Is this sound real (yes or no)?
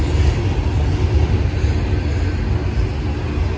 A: yes